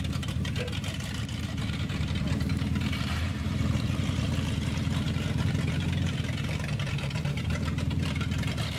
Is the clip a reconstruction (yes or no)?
yes